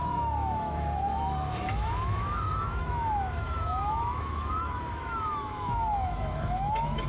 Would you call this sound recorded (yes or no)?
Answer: no